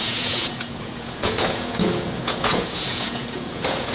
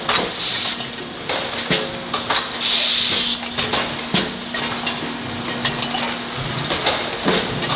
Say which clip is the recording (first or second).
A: second